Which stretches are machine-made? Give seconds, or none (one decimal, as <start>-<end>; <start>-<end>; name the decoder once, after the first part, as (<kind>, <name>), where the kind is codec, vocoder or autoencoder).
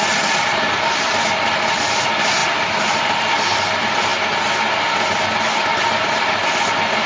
2.4-3.2 (vocoder, BigVGAN v2)